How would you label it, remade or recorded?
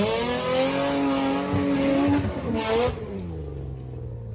recorded